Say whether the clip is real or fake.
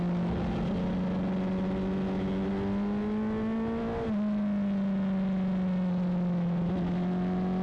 real